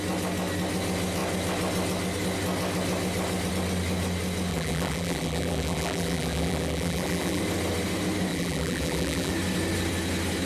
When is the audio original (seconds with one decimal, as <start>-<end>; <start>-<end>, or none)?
0.0-4.5; 7.4-8.3; 9.3-10.5